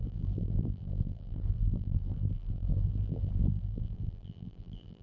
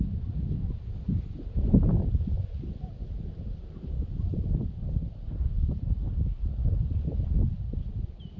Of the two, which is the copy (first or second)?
first